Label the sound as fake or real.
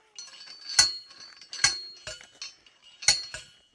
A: real